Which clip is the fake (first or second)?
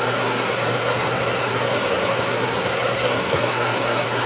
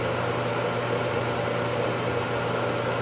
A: first